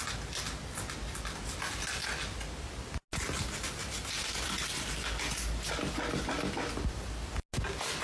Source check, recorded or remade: recorded